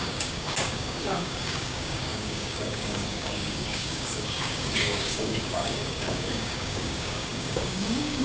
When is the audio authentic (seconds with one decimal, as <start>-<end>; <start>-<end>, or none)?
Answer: none